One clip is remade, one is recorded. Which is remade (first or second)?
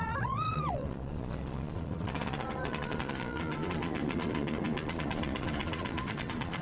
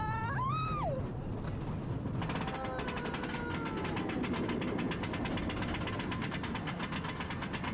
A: first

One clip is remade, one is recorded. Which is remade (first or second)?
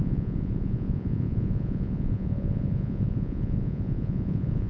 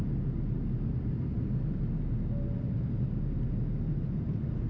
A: first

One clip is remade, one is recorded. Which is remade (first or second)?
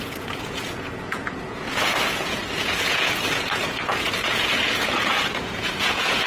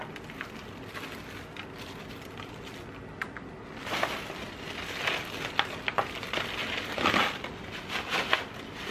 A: first